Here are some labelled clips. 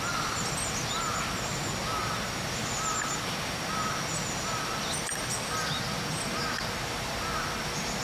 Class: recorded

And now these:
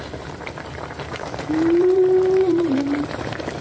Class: remade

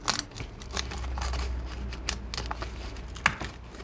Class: recorded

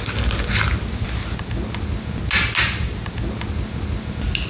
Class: recorded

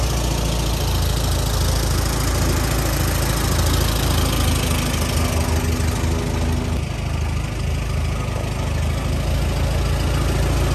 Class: recorded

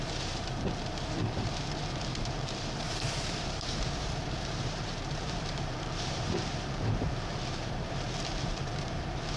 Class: remade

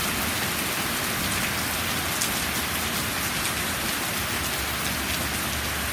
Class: recorded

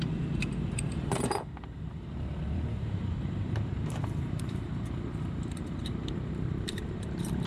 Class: remade